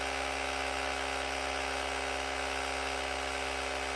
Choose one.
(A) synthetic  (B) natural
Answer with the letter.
B